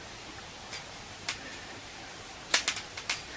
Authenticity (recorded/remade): recorded